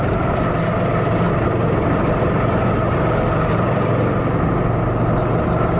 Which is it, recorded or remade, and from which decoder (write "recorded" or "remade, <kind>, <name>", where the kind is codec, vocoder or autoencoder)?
recorded